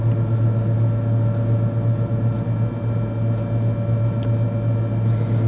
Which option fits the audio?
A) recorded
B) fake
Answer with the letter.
A